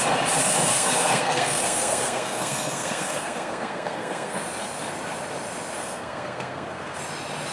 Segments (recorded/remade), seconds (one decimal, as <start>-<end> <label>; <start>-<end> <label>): 0.0-0.7 recorded; 0.7-4.4 remade; 4.4-5.8 recorded; 5.8-7.0 remade; 7.0-7.5 recorded